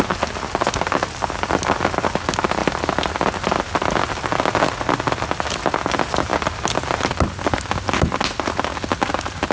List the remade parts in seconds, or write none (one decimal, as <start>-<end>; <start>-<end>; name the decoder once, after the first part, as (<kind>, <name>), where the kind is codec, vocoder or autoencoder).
none

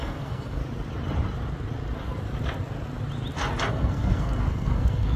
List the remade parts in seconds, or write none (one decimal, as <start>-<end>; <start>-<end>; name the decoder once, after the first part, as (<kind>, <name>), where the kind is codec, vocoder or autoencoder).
0.0-0.6 (codec, SNAC); 3.7-5.2

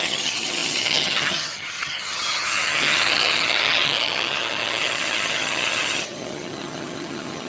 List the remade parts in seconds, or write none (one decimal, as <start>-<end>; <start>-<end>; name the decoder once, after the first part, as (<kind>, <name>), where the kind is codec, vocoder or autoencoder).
0.0-7.5 (vocoder, HiFi-GAN)